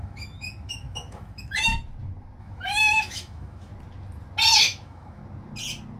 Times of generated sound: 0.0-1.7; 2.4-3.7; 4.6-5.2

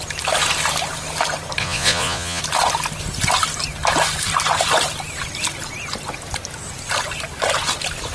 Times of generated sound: 1.6-2.4

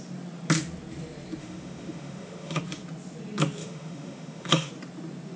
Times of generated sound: 1.4-2.6; 3.6-4.7